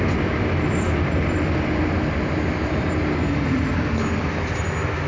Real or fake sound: real